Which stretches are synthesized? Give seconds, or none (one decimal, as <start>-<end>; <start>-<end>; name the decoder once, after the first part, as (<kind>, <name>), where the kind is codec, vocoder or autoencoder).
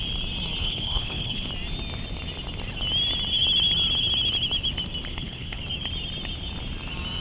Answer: 0.6-1.5 (codec, HILCodec); 5.1-5.6